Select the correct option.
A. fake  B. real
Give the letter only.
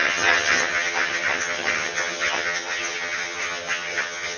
A